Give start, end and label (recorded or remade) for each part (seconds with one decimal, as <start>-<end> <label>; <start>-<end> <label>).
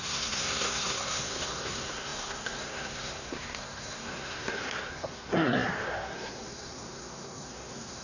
0.0-8.0 remade